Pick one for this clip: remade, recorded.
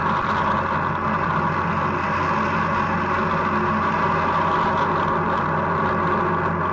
recorded